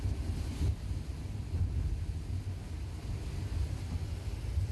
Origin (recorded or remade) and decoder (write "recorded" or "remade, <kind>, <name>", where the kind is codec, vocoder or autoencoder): recorded